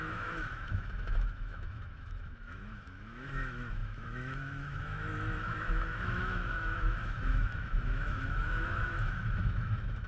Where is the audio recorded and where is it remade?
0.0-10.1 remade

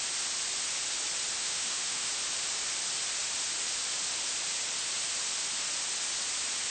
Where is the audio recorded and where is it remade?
0.0-1.4 recorded; 1.4-2.1 remade; 2.1-6.7 recorded